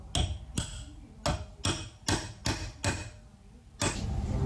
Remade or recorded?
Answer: recorded